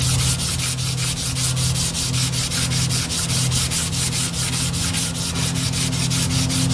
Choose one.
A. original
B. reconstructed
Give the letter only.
A